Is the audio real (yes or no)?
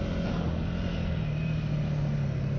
yes